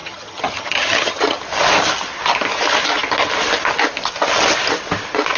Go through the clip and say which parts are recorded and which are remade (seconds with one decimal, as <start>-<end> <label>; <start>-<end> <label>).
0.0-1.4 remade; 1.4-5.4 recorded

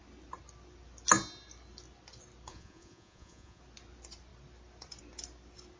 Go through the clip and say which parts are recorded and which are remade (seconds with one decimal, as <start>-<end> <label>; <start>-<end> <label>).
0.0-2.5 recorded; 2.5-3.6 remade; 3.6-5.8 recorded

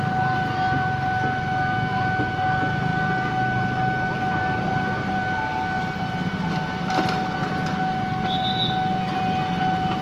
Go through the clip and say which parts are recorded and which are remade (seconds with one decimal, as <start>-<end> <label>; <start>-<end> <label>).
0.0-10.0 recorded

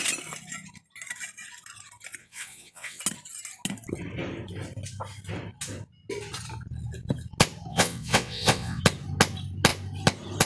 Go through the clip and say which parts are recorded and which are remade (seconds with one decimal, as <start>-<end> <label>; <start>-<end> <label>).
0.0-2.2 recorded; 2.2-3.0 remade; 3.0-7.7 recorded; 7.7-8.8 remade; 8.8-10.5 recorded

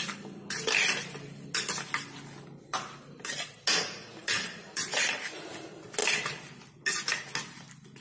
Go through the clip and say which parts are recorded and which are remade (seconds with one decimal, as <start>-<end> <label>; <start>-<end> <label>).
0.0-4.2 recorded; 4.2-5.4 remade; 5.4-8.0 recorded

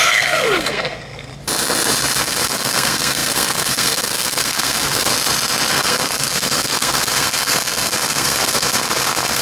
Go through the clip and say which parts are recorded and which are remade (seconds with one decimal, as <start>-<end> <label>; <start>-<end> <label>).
0.0-1.3 remade; 1.3-2.2 recorded; 2.2-5.1 remade; 5.1-5.7 recorded; 5.7-9.4 remade

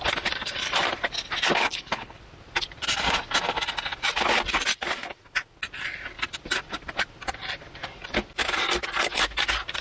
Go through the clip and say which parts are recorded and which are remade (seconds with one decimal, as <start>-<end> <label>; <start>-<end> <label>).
0.0-1.6 recorded; 1.6-2.2 remade; 2.2-9.8 recorded